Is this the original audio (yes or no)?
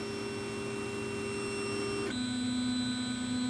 yes